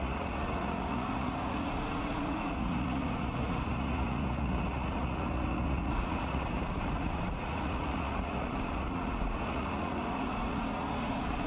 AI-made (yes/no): yes